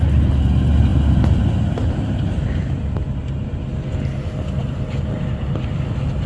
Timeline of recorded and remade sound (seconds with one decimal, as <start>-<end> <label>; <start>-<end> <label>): 0.0-6.3 recorded